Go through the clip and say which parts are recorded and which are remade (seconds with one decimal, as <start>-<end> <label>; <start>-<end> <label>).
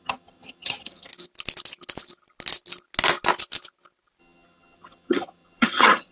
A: 0.0-1.1 remade; 1.1-4.2 recorded; 4.2-6.1 remade